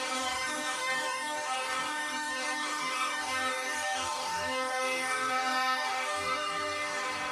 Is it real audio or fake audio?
fake